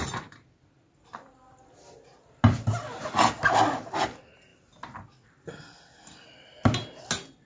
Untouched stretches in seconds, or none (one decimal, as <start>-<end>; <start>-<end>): 0.0-7.5